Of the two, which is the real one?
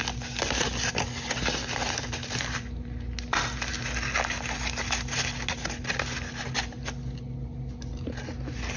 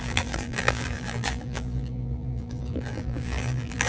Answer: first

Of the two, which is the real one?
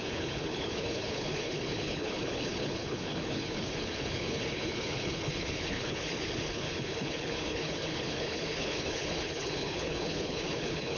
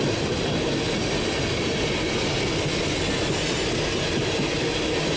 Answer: second